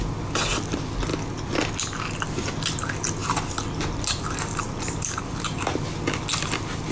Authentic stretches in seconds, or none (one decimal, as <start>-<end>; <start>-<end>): 0.0-3.2; 5.8-6.9